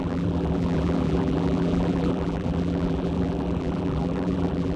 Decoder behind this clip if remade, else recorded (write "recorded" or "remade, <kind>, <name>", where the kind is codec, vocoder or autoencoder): remade, vocoder, BigVGAN v2